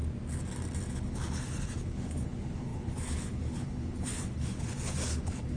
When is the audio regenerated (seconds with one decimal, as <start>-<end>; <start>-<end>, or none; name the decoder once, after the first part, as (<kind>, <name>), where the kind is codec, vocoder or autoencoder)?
0.9-5.6 (codec, HILCodec)